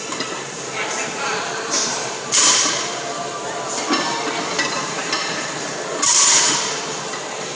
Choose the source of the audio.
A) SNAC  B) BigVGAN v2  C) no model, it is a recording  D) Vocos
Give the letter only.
B